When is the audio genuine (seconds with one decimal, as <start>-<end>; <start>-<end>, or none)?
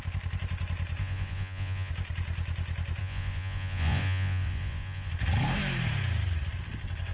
0.0-1.0; 1.9-3.0; 5.1-7.1